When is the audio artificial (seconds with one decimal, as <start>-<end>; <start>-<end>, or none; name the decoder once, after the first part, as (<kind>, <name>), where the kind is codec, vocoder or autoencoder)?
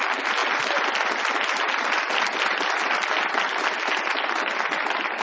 none